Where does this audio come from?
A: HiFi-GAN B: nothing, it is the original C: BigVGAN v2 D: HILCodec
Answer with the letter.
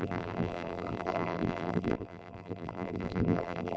C